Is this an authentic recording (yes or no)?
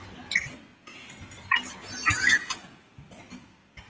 yes